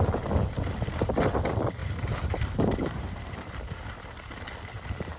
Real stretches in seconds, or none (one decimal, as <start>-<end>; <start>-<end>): 0.0-1.8; 4.0-5.2